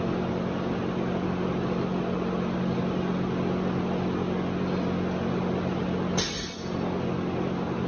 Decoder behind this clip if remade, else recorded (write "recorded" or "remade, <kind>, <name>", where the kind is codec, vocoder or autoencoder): recorded